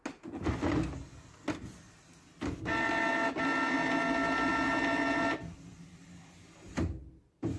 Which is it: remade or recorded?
recorded